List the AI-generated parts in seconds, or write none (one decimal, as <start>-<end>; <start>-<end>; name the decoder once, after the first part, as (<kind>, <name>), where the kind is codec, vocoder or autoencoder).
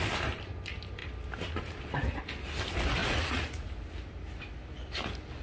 3.0-3.7 (vocoder, Vocos)